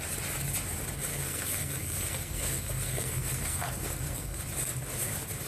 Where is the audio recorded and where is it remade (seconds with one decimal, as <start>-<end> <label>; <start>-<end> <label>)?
0.0-1.1 recorded; 1.1-4.4 remade; 4.4-5.5 recorded